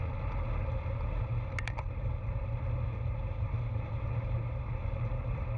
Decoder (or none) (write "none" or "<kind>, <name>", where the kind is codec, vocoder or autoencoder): none